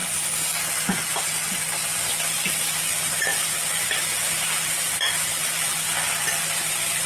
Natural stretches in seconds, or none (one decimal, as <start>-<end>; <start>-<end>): 0.0-0.7